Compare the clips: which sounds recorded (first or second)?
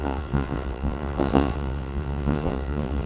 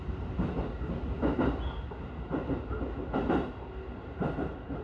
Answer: second